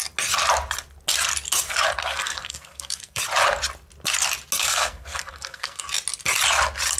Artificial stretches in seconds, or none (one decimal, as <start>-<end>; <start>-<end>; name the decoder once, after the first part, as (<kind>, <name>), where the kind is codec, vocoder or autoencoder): 2.0-3.2 (codec, SNAC); 4.6-5.8